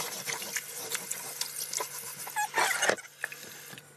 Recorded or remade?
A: recorded